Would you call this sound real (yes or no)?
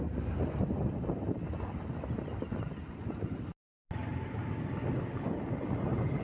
yes